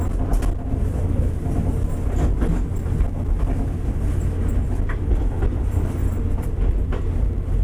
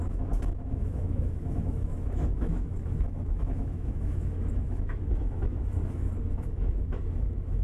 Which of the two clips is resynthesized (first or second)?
second